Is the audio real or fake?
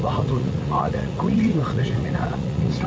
fake